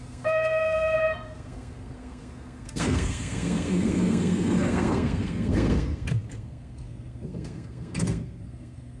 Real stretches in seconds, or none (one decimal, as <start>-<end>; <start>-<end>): none